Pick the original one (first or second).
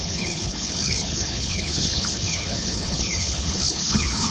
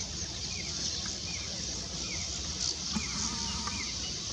second